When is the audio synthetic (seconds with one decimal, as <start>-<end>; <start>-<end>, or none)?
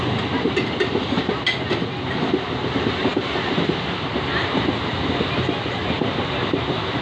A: none